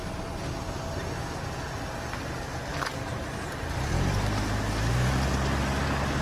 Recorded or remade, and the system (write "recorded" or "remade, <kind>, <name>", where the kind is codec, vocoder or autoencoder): recorded